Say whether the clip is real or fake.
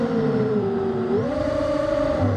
fake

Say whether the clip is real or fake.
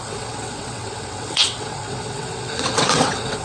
fake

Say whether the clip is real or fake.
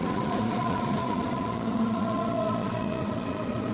fake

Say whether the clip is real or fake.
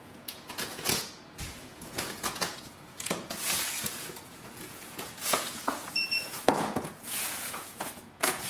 fake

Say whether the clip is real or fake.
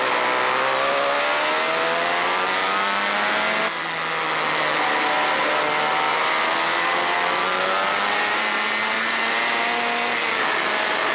real